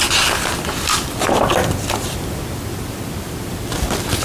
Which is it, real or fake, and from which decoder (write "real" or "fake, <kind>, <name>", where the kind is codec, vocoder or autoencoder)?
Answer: real